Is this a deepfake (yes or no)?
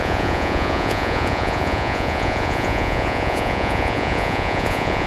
yes